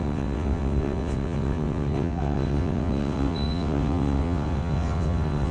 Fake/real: fake